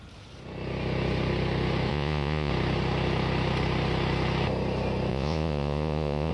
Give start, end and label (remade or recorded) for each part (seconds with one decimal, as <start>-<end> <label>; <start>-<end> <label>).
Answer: 0.0-1.9 recorded; 1.9-2.5 remade; 2.5-5.1 recorded; 5.1-6.3 remade